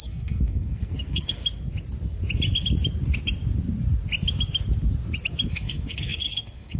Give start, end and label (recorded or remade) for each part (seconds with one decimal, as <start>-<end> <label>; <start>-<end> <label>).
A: 0.0-1.4 remade; 1.4-5.5 recorded; 5.5-6.8 remade